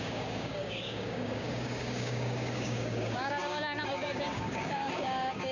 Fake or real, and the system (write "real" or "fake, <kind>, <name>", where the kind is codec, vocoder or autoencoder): fake, codec, DAC